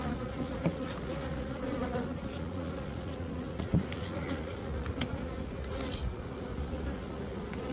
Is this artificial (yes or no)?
yes